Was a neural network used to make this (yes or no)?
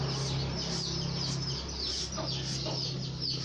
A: no